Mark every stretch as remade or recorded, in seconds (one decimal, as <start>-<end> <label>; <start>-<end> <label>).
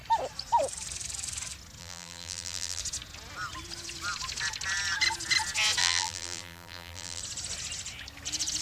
0.0-1.8 recorded; 1.8-2.8 remade; 2.8-5.8 recorded; 5.8-7.2 remade; 7.2-8.6 recorded